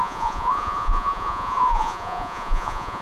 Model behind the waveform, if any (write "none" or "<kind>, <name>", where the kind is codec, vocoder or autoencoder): vocoder, Vocos